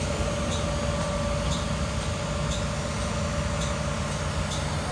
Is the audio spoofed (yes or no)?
no